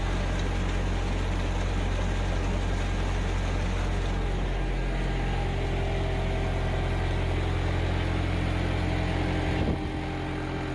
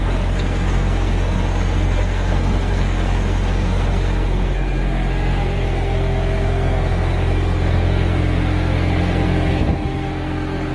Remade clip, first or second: second